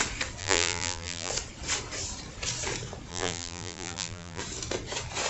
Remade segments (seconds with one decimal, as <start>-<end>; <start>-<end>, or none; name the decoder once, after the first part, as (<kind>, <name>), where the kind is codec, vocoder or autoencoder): 0.4-1.3 (vocoder, BigVGAN v2); 3.1-4.4